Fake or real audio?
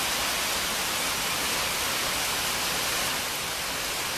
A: real